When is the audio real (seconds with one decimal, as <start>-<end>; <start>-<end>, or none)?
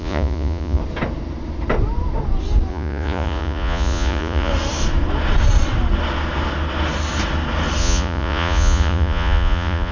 0.8-2.7; 4.5-7.8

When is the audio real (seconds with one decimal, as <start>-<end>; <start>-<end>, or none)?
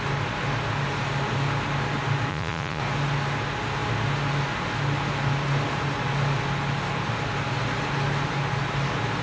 0.0-2.3; 2.8-9.2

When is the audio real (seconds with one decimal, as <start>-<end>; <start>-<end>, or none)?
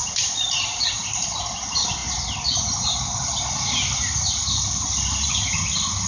0.0-6.1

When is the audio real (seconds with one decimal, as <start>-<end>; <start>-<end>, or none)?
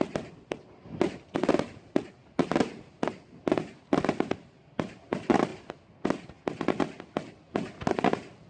0.0-8.5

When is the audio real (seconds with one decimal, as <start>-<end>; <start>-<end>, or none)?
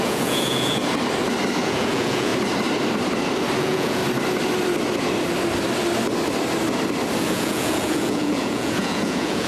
0.8-1.6; 2.3-3.6; 4.0-7.2